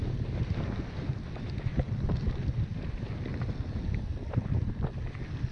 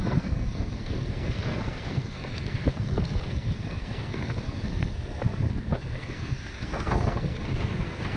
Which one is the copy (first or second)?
second